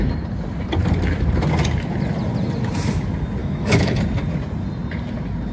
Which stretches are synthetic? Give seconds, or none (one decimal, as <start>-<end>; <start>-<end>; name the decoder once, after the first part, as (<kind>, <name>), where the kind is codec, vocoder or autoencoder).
3.4-4.0 (autoencoder, DAC-VAE)